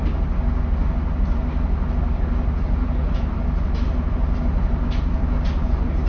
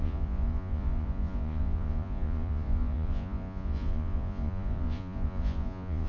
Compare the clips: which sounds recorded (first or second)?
first